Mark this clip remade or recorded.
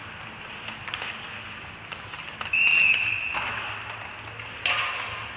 recorded